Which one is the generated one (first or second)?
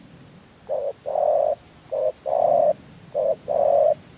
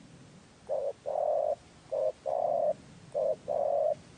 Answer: first